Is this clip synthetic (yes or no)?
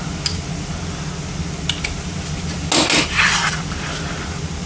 no